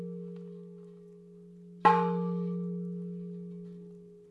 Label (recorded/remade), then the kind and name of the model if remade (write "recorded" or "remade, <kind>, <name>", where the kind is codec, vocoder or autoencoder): recorded